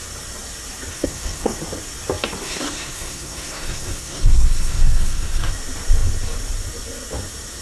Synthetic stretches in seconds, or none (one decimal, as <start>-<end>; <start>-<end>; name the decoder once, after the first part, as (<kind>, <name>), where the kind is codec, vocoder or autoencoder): 0.9-1.6 (codec, SNAC); 2.4-5.5